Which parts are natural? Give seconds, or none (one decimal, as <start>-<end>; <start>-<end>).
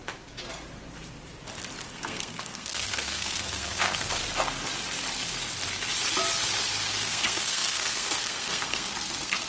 0.0-1.9; 4.2-6.9